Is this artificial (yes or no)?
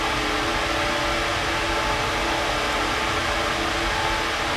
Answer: no